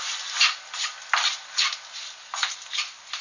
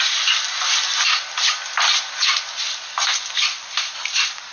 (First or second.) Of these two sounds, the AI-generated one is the second